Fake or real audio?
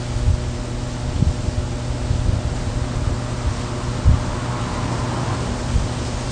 real